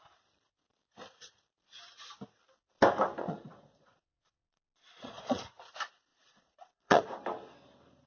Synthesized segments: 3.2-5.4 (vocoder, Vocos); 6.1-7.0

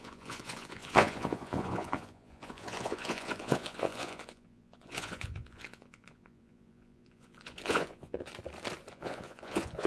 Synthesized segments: 0.0-8.3 (vocoder, Vocos); 8.9-9.9

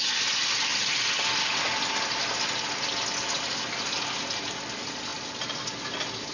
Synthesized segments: none

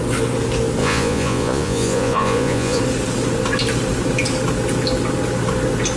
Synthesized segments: 0.8-2.8 (vocoder, Vocos)

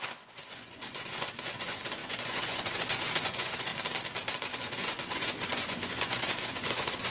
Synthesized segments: 0.0-3.7 (vocoder, Vocos); 4.5-7.1